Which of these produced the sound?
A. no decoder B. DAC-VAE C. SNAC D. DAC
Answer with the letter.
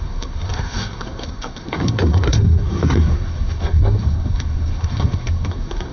C